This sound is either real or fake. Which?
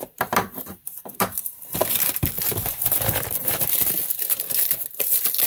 fake